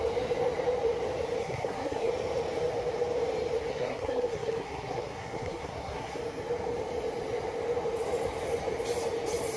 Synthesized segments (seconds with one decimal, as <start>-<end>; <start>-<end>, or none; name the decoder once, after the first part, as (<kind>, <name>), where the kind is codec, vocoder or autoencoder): 1.4-2.1 (codec, SNAC); 3.7-6.2